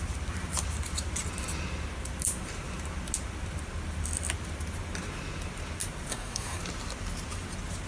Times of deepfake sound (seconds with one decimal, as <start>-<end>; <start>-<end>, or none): 6.1-6.6